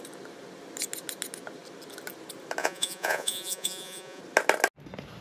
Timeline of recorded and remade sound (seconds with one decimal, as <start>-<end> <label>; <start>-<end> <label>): 0.0-2.6 recorded; 2.6-4.2 remade; 4.2-5.2 recorded